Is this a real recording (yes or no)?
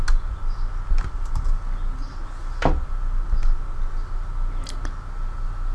yes